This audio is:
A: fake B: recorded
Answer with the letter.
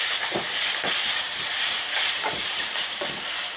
A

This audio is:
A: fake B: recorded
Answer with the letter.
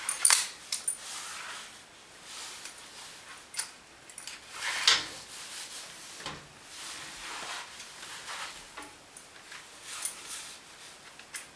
B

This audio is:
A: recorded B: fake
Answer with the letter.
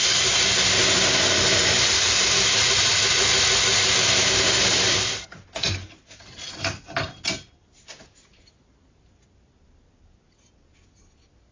A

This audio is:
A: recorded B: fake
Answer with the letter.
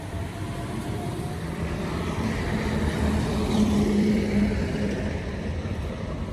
B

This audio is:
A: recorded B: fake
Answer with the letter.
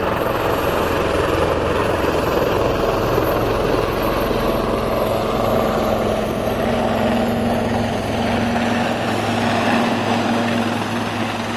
A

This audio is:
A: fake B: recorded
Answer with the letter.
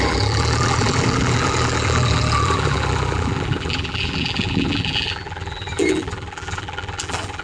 A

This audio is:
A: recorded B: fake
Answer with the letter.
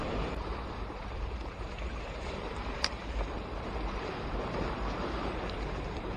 B